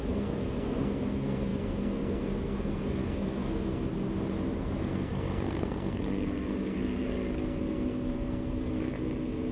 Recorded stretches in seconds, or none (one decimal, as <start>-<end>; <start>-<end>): 3.9-4.6